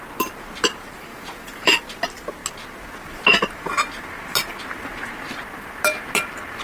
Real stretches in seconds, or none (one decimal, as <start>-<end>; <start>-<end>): 0.0-1.1; 1.8-6.6